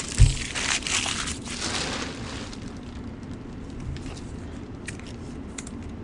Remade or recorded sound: recorded